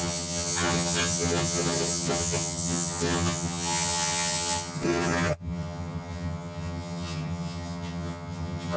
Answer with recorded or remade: remade